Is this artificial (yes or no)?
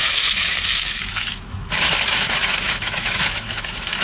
yes